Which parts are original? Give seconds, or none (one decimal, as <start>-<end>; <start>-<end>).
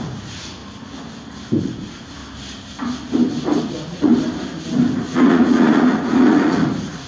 0.6-1.6; 2.2-3.6; 4.1-5.0